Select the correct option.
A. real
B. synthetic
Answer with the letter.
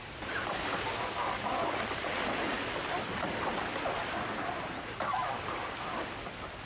A